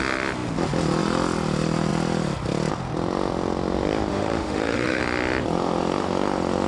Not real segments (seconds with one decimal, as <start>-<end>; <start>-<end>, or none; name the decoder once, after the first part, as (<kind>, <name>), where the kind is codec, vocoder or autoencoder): 4.1-5.0 (autoencoder, DAC-VAE)